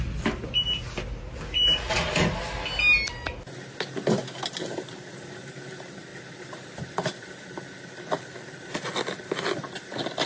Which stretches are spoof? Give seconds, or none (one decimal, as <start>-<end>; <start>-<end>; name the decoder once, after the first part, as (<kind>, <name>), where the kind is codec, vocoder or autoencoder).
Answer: none